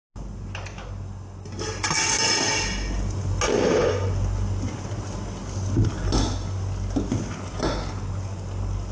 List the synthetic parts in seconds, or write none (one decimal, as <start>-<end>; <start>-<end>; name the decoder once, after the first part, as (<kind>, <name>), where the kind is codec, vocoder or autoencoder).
none